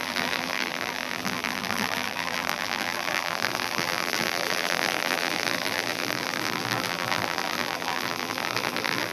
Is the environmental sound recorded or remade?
remade